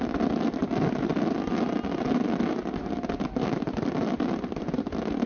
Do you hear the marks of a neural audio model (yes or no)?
no